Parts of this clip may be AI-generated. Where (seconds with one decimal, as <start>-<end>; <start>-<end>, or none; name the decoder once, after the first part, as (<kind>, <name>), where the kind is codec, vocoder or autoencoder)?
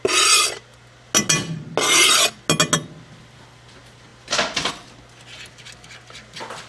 none